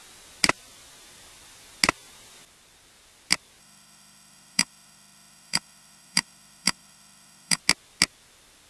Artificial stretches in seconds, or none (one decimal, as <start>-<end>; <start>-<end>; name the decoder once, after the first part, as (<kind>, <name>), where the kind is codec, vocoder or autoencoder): 3.6-7.6 (autoencoder, DAC-VAE)

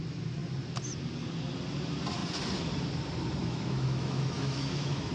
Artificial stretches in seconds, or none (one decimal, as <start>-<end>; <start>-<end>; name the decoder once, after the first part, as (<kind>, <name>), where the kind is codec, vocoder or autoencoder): 3.4-5.1 (autoencoder, DAC-VAE)

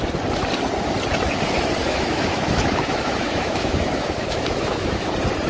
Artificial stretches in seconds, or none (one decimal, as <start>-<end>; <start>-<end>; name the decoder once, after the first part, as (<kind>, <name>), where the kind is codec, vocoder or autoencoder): 1.8-5.1 (autoencoder, DAC-VAE)

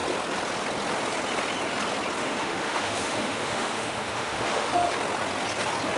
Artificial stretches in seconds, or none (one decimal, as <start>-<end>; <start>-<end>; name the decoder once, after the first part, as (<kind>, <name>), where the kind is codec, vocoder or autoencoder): 2.2-4.9 (autoencoder, DAC-VAE)

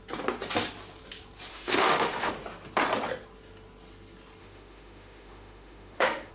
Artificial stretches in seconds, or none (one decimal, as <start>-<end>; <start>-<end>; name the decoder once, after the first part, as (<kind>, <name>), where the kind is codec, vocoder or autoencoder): 1.5-2.3 (autoencoder, DAC-VAE); 4.4-6.3

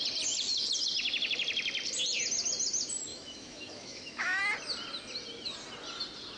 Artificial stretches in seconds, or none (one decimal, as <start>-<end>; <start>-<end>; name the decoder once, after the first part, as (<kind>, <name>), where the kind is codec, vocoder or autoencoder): 3.1-4.4 (autoencoder, DAC-VAE)

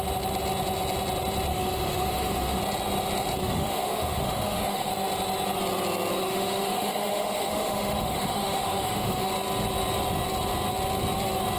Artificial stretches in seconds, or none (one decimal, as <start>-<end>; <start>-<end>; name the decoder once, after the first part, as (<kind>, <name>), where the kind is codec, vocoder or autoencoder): 1.5-2.6 (autoencoder, DAC-VAE); 3.4-4.9; 6.1-9.3